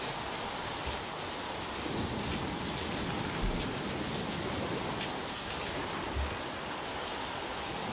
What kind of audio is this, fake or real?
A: real